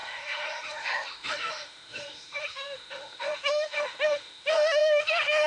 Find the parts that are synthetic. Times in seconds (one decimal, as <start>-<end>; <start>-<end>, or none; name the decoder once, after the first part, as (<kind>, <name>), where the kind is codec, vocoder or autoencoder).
0.0-5.5 (autoencoder, DAC-VAE)

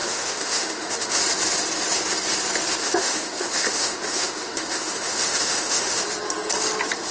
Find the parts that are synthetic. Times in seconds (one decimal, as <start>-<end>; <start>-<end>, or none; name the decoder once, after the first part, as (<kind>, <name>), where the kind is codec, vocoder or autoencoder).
0.0-1.2 (autoencoder, DAC-VAE); 2.8-6.0